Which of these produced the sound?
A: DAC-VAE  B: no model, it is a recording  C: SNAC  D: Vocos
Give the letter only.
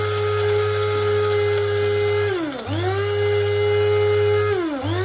B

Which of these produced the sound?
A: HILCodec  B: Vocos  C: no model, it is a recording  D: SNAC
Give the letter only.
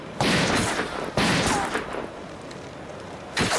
C